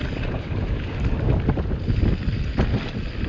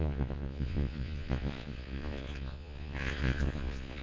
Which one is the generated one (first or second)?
second